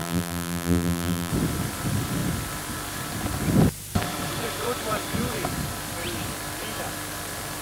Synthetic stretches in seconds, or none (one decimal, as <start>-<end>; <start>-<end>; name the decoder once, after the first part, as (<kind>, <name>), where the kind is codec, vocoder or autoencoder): 0.0-1.3 (vocoder, BigVGAN v2)